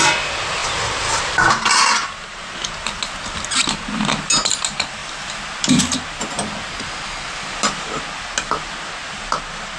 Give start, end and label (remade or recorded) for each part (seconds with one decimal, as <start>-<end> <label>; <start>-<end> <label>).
0.0-9.8 recorded